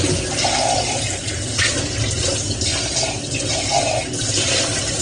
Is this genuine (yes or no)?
yes